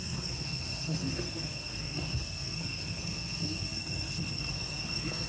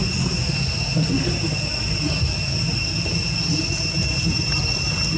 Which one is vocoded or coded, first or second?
first